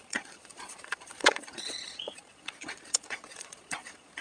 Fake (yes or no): yes